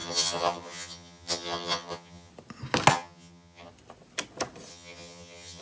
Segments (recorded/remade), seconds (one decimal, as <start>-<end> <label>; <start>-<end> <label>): 0.0-2.3 remade; 2.3-2.9 recorded; 2.9-3.7 remade; 3.7-4.7 recorded; 4.7-5.6 remade